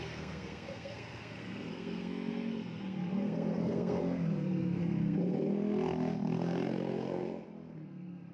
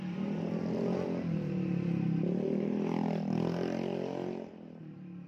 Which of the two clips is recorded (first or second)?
second